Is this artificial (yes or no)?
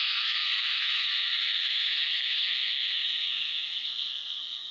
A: yes